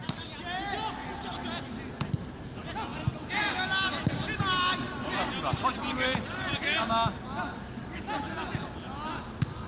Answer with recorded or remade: recorded